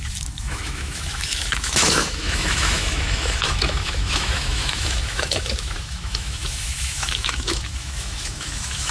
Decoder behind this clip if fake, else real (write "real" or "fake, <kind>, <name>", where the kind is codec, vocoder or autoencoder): fake, autoencoder, DAC-VAE